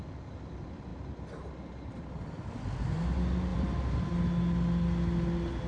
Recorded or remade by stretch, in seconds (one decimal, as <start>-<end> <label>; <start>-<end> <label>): 0.0-3.5 recorded; 3.5-4.2 remade; 4.2-5.7 recorded